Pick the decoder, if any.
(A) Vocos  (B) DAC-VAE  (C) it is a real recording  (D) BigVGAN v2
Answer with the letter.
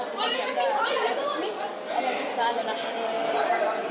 C